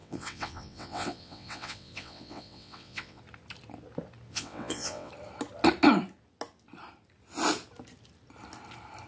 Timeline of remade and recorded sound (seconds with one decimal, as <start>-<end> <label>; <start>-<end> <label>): 0.0-3.2 remade; 3.2-4.3 recorded; 4.3-5.1 remade; 5.1-9.1 recorded